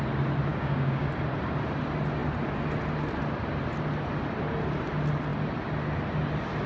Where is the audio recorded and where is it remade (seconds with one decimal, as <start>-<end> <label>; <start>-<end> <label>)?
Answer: 0.0-0.5 recorded; 0.5-1.1 remade; 1.1-6.7 recorded